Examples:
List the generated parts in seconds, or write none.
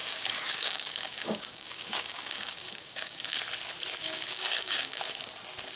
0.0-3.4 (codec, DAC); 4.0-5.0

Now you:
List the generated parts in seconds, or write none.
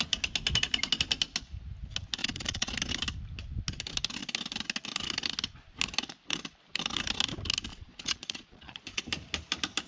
2.2-2.7 (vocoder, Vocos); 7.7-9.0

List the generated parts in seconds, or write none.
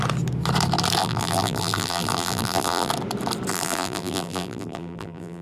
1.0-2.9 (vocoder, BigVGAN v2); 3.5-5.4